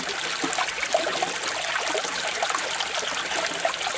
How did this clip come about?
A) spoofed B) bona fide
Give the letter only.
B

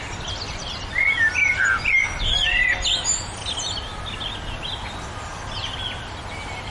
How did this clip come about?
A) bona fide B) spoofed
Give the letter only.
A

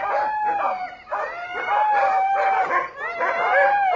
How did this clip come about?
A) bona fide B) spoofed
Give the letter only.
A